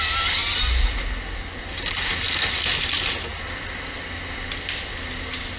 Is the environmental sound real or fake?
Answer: real